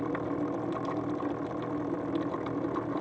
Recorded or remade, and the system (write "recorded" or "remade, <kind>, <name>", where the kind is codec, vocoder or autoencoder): recorded